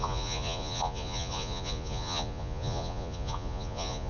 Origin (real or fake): fake